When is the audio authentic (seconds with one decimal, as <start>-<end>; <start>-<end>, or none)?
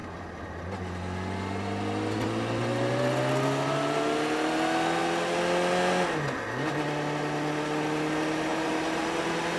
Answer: 0.8-8.5; 9.2-9.6